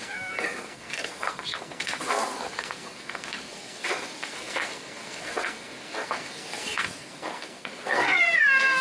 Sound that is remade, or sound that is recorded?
remade